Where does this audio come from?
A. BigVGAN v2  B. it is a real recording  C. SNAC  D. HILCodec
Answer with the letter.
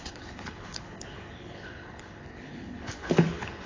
D